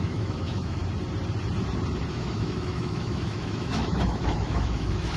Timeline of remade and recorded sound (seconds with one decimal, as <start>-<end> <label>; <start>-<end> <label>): 0.0-0.8 remade; 0.8-2.1 recorded; 2.1-5.2 remade